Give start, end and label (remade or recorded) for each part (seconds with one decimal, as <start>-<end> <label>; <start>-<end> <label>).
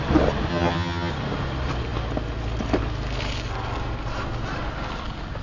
0.0-0.5 recorded; 0.5-1.1 remade; 1.1-5.4 recorded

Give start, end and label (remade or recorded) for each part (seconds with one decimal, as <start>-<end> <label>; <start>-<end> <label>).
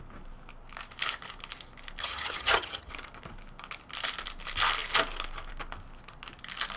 0.0-2.0 recorded; 2.0-2.9 remade; 2.9-6.8 recorded